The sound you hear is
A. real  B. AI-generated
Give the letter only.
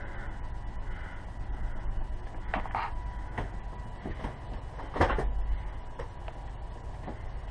A